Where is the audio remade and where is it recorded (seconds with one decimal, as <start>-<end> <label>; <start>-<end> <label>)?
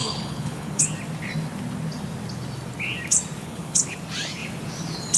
0.0-0.8 remade; 0.8-3.4 recorded; 3.4-4.0 remade; 4.0-5.2 recorded